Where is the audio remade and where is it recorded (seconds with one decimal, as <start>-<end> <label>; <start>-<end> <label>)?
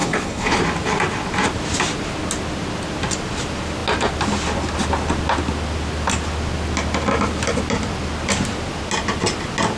0.0-0.6 remade; 0.6-9.8 recorded